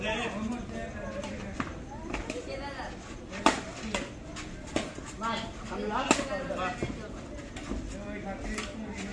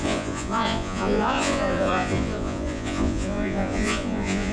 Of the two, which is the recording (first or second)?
first